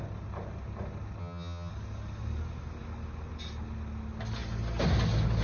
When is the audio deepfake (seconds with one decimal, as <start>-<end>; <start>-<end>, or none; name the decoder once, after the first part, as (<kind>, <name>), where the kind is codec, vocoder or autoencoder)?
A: 1.2-1.7 (vocoder, HiFi-GAN)